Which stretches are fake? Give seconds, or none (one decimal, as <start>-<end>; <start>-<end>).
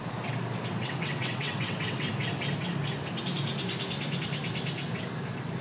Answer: 0.7-2.1